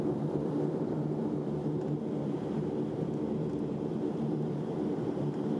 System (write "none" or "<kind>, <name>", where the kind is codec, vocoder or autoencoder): vocoder, BigVGAN v2